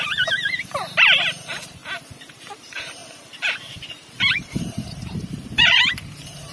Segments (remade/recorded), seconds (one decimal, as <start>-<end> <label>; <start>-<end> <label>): 0.0-1.8 remade; 1.8-2.3 recorded; 2.3-3.0 remade; 3.0-4.6 recorded; 4.6-6.5 remade